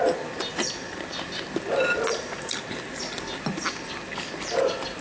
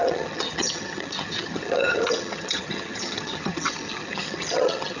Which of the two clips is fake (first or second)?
second